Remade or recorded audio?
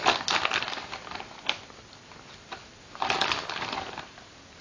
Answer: recorded